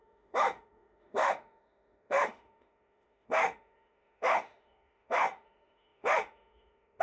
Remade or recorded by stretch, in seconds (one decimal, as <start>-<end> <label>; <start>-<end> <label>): 0.0-7.0 remade